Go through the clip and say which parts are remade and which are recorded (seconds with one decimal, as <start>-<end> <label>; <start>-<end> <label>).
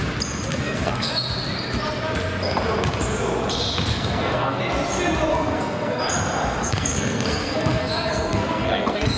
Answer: 0.0-0.5 recorded; 0.5-1.1 remade; 1.1-3.9 recorded; 3.9-4.6 remade; 4.6-5.3 recorded; 5.3-6.0 remade; 6.0-6.6 recorded; 6.6-9.2 remade